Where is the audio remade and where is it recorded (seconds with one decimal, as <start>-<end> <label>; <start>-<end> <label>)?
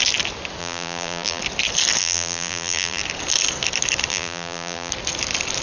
0.0-0.6 recorded; 0.6-1.4 remade; 1.4-2.0 recorded; 2.0-3.0 remade; 3.0-4.1 recorded; 4.1-4.9 remade; 4.9-5.6 recorded